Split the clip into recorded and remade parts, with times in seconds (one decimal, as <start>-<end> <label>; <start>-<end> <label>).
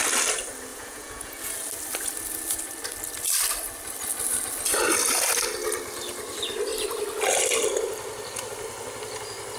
0.0-0.7 recorded; 0.7-1.5 remade; 1.5-9.6 recorded